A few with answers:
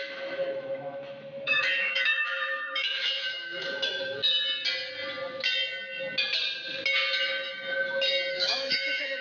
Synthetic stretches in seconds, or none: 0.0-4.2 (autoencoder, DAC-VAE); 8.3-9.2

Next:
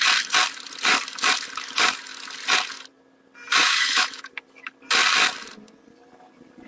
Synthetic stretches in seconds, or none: 3.6-4.3 (autoencoder, DAC-VAE)

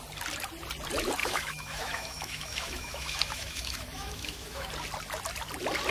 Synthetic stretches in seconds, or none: 1.2-4.7 (autoencoder, DAC-VAE)

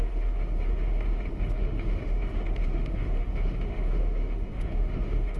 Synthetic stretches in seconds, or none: 0.0-5.4 (autoencoder, DAC-VAE)

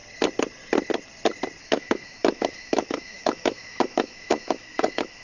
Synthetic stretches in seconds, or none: 1.6-5.2 (autoencoder, DAC-VAE)

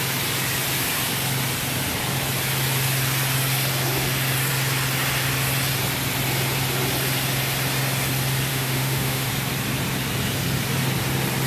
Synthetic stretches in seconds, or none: 8.5-9.3 (autoencoder, DAC-VAE)

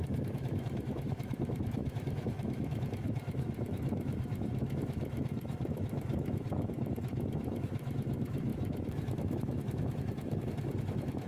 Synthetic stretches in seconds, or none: 0.0-11.3 (autoencoder, DAC-VAE)